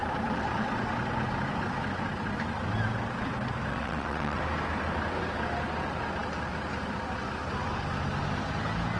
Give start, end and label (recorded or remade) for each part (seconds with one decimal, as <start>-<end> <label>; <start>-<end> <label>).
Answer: 0.0-3.7 recorded; 3.7-4.4 remade; 4.4-9.0 recorded